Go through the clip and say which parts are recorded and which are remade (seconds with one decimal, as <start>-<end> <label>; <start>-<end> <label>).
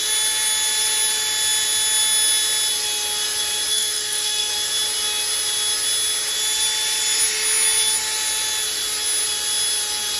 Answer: 0.0-3.7 recorded; 3.7-4.5 remade; 4.5-10.2 recorded